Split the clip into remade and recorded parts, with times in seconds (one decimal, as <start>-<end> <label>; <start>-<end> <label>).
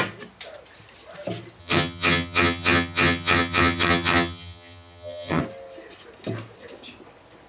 0.0-1.6 recorded; 1.6-5.4 remade; 5.4-7.5 recorded